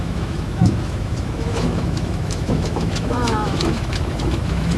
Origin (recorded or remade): remade